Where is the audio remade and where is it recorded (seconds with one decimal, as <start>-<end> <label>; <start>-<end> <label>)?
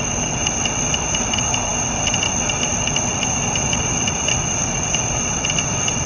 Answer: 0.0-6.1 remade